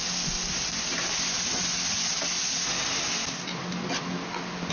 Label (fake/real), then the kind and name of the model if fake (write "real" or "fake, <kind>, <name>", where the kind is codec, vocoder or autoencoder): real